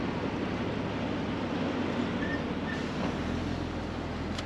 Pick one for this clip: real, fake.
real